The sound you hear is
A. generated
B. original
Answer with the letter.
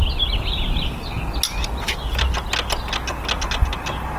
B